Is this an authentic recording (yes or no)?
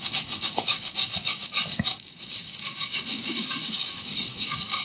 no